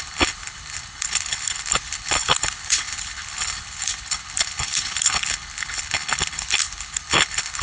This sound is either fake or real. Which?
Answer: fake